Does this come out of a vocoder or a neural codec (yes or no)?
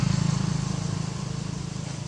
no